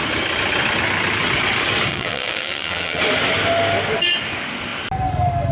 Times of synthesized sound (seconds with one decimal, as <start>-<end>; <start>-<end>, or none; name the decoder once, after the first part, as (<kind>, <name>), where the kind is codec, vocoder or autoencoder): 1.9-3.0 (vocoder, WaveNeXt)